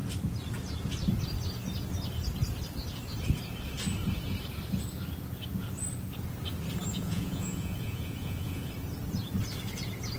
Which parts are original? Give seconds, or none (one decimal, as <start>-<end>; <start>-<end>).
0.0-6.9; 8.7-10.2